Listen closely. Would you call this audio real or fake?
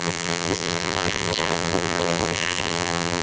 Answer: fake